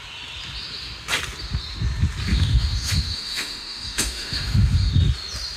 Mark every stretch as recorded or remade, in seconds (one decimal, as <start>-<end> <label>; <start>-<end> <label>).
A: 0.0-2.3 recorded; 2.3-4.9 remade; 4.9-5.6 recorded